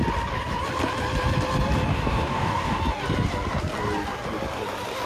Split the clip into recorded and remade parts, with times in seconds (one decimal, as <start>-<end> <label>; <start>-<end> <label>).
0.0-1.9 recorded; 1.9-2.8 remade; 2.8-5.1 recorded